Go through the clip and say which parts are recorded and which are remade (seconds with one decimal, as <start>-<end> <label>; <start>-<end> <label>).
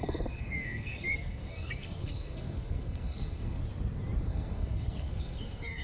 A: 0.0-3.6 remade; 3.6-4.3 recorded; 4.3-5.8 remade